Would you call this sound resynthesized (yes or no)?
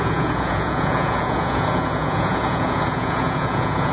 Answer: yes